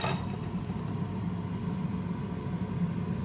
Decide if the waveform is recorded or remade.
recorded